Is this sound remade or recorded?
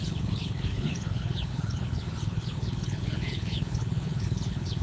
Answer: remade